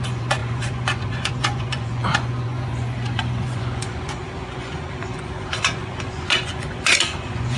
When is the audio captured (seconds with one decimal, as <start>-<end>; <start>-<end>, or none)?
none